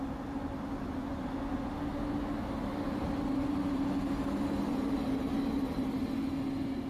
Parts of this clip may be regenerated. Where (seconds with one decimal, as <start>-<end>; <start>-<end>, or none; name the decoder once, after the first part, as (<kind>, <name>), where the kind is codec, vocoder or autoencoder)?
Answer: none